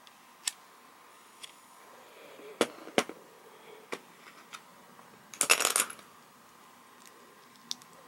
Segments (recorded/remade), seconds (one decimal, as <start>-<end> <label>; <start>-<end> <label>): 0.0-1.1 recorded; 1.1-1.8 remade; 1.8-8.1 recorded